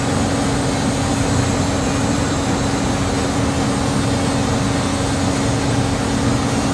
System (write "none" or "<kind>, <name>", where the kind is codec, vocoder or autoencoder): none